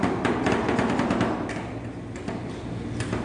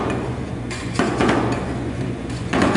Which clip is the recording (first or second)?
first